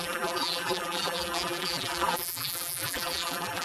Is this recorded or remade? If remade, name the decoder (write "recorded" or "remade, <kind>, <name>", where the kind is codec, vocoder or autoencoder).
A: remade, vocoder, BigVGAN v2